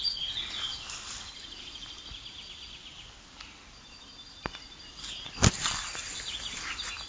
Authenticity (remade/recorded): recorded